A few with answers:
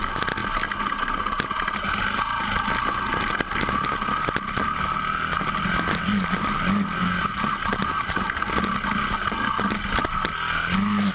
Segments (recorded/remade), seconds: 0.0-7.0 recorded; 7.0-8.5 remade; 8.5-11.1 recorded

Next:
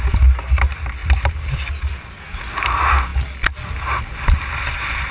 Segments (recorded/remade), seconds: 0.0-5.1 recorded